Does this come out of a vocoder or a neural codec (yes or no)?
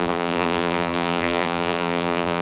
yes